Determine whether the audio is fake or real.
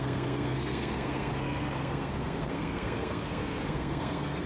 fake